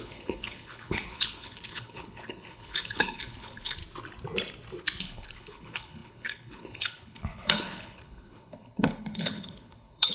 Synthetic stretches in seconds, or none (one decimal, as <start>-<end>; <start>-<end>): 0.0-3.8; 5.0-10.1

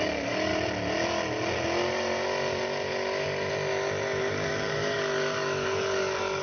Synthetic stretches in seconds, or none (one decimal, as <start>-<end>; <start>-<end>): 0.0-0.5; 4.3-6.4

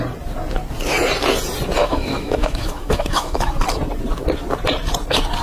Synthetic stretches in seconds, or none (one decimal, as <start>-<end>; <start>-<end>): 1.8-3.5

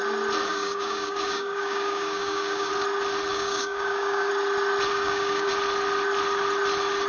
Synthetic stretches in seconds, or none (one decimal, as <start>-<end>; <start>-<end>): 0.5-2.7; 3.3-4.3; 4.9-5.5